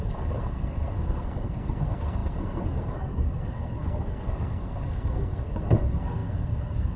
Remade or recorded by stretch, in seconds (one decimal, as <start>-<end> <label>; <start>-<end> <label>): 0.0-7.0 remade